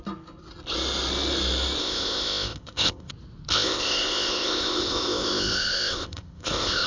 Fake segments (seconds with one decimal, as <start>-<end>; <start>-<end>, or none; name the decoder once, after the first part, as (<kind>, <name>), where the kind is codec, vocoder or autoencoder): 1.8-3.1 (codec, ZipCodec); 3.5-6.9